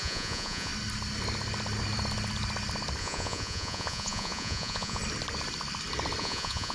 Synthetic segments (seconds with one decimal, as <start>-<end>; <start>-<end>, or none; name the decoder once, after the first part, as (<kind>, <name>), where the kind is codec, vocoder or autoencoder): 0.0-0.7 (vocoder, Vocos); 3.0-5.0; 6.2-6.7